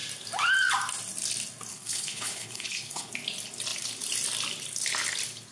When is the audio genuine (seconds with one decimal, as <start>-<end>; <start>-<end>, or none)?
0.0-1.7; 3.1-5.5